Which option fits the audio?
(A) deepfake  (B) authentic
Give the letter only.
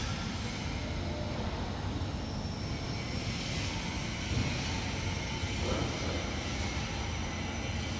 B